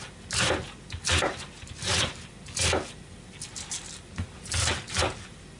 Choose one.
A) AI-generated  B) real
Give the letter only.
B